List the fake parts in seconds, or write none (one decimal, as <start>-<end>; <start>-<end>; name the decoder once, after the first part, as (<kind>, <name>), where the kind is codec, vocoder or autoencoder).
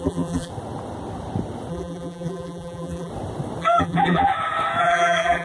0.0-0.5 (vocoder, BigVGAN v2); 1.7-3.1; 3.6-4.3; 4.8-5.4